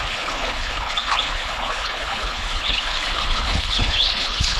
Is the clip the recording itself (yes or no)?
no